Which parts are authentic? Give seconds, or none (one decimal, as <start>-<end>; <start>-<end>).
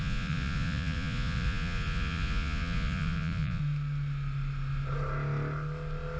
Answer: 3.6-6.2